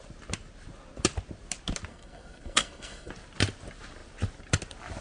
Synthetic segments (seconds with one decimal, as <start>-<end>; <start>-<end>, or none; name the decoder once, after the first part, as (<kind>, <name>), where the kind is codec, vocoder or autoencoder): 1.9-3.1 (codec, SNAC)

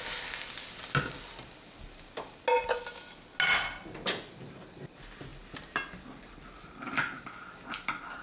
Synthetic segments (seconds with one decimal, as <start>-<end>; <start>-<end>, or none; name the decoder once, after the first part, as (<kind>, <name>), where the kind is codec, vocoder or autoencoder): none